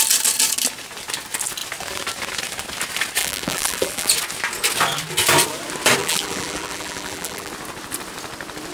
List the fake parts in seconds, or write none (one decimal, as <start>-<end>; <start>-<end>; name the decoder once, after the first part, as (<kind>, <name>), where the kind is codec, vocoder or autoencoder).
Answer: 3.2-4.1 (vocoder, BigVGAN v2); 6.0-7.5